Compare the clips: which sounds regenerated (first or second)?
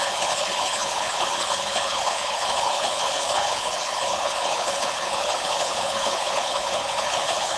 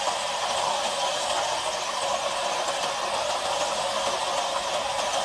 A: first